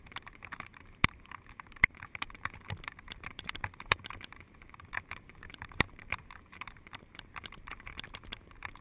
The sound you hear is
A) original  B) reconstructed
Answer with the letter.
B